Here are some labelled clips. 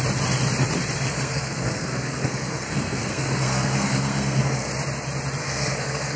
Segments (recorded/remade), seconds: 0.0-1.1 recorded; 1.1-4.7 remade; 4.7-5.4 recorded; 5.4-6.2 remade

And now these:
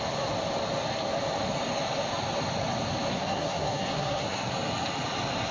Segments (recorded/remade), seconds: 0.0-3.1 recorded; 3.1-4.5 remade; 4.5-5.5 recorded

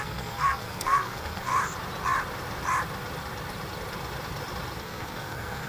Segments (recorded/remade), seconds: 0.0-1.5 remade; 1.5-4.8 recorded; 4.8-5.7 remade

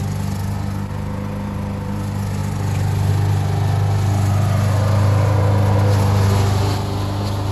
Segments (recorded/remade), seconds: 0.0-7.5 recorded

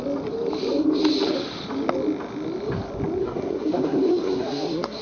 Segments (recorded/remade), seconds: 0.0-3.2 recorded; 3.2-5.0 remade

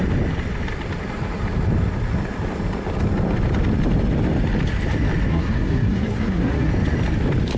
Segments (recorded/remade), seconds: 0.0-5.3 recorded; 5.3-6.7 remade; 6.7-7.6 recorded

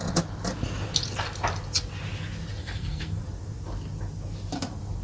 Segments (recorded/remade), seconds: 0.0-2.6 recorded; 2.6-3.2 remade; 3.2-5.0 recorded